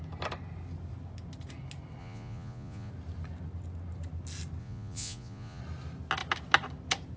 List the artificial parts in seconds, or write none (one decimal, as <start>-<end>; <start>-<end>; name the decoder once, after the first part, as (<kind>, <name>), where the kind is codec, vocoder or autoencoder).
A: 2.0-2.9 (vocoder, Vocos); 4.6-5.6